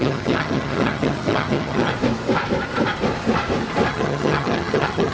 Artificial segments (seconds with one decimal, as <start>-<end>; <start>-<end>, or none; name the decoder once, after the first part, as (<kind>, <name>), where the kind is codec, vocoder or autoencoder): 0.0-1.9 (vocoder, HiFi-GAN); 3.9-5.1